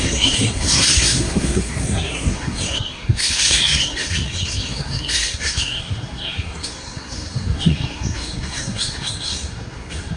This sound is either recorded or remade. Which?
remade